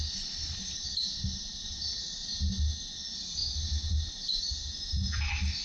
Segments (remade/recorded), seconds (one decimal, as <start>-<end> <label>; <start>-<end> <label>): 0.0-0.4 recorded; 0.4-0.9 remade; 0.9-1.5 recorded; 1.5-2.1 remade; 2.1-3.4 recorded; 3.4-4.4 remade; 4.4-5.6 recorded